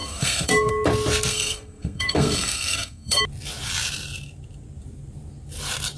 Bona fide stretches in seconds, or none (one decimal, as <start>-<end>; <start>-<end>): 0.7-1.3; 3.2-6.0